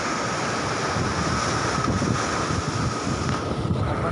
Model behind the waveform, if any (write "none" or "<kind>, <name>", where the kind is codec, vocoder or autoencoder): none